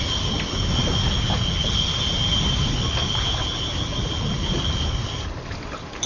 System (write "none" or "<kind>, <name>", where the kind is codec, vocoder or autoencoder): none